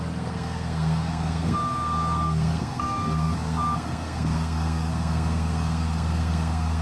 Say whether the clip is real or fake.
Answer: fake